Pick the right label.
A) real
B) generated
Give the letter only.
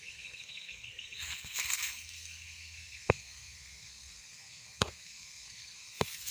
B